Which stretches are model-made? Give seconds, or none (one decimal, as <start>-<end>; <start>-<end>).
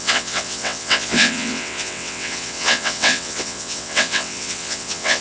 0.0-5.2